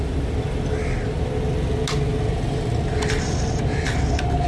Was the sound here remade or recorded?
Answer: recorded